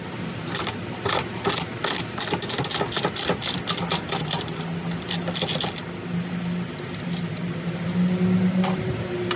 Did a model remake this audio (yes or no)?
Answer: no